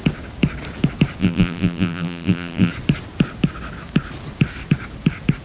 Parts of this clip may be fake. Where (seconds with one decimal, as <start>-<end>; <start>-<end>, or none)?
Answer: 1.2-2.7

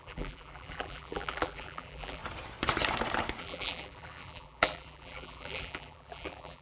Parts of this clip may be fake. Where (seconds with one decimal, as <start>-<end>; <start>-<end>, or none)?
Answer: 0.0-2.2; 3.4-6.6

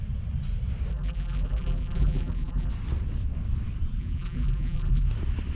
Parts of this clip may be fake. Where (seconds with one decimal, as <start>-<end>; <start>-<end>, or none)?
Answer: 0.9-2.7; 4.0-5.1

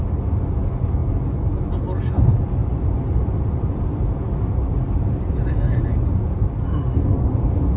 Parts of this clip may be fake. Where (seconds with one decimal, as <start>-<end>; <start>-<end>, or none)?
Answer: 2.6-7.3

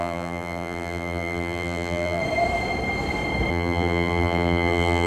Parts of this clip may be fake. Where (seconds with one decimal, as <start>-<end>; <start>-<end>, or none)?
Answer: 0.0-2.2; 3.5-5.1

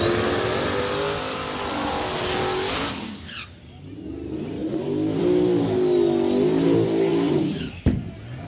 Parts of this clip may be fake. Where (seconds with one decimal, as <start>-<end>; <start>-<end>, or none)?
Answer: 7.1-7.7